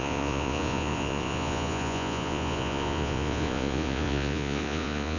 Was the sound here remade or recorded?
remade